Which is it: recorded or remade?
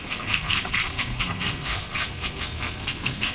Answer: remade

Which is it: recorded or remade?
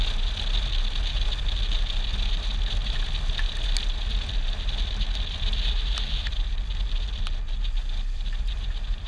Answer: recorded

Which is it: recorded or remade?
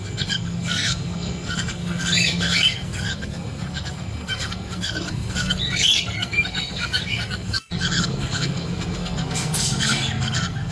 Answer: remade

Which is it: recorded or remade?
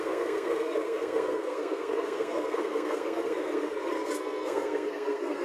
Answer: remade